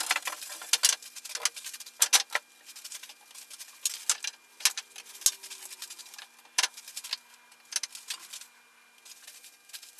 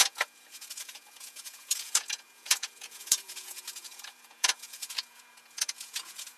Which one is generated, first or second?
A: second